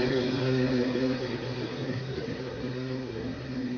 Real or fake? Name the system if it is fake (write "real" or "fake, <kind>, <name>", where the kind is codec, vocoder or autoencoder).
fake, codec, SNAC